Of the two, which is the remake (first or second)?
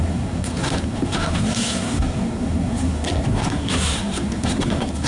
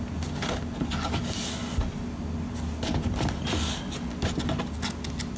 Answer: first